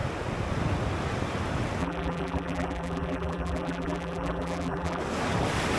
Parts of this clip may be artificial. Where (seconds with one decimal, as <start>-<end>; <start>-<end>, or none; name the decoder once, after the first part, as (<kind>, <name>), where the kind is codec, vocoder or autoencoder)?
1.8-5.0 (vocoder, BigVGAN v2)